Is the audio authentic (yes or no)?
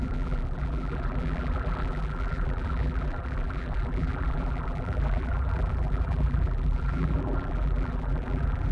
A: no